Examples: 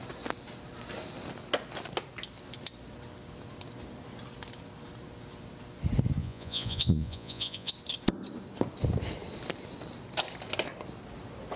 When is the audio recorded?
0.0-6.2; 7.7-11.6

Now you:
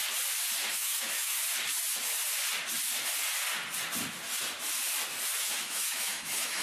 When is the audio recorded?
0.0-0.7; 1.4-5.4

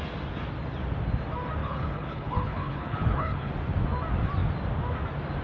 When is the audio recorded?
0.0-1.6; 3.5-5.4

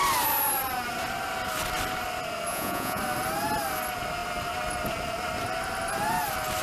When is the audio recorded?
0.0-2.5; 3.0-6.6

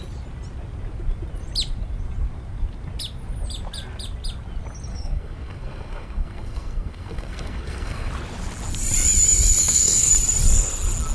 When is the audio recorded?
0.0-4.9; 8.1-9.6; 10.1-11.1

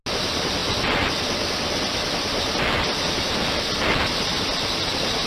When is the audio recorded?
0.0-5.3

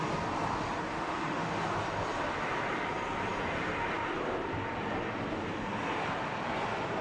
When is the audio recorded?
0.0-0.9; 1.6-7.0

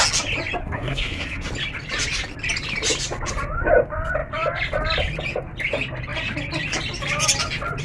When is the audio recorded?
0.0-0.6; 1.5-7.8